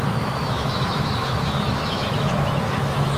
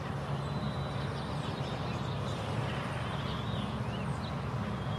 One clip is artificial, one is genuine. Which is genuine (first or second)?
second